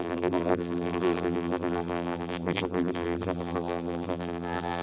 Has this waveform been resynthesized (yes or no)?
yes